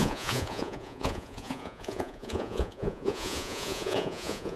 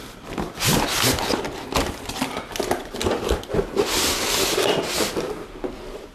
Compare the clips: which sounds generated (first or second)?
first